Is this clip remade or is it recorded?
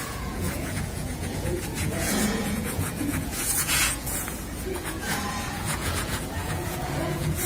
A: remade